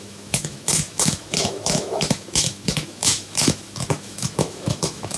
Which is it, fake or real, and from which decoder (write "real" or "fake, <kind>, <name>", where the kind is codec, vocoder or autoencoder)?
fake, autoencoder, DAC-VAE